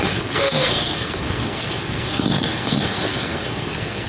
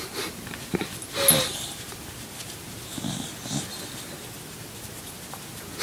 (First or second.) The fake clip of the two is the first